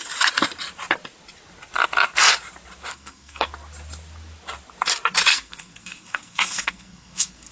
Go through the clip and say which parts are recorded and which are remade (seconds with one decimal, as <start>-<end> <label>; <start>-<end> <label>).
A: 0.0-2.9 recorded; 2.9-3.5 remade; 3.5-5.3 recorded; 5.3-7.5 remade

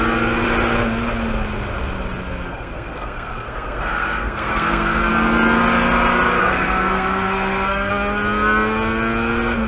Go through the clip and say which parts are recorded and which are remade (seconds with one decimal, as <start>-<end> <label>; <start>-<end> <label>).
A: 0.0-2.5 recorded; 2.5-5.1 remade; 5.1-6.4 recorded; 6.4-7.9 remade; 7.9-9.7 recorded